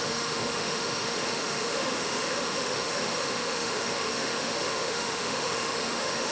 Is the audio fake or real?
fake